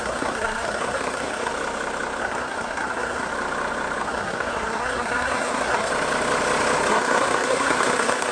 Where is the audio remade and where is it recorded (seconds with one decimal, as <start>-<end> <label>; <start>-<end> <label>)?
0.0-1.5 remade; 1.5-2.2 recorded; 2.2-3.3 remade; 3.3-4.0 recorded; 4.0-5.9 remade; 5.9-6.9 recorded; 6.9-8.3 remade